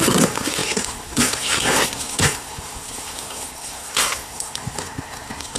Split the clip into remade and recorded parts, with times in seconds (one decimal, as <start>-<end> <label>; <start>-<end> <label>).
0.0-5.6 remade